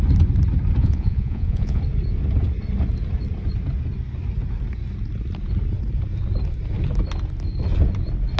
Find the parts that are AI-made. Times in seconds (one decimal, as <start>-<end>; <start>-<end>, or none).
0.8-1.8